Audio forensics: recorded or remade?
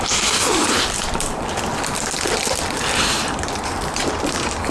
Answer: remade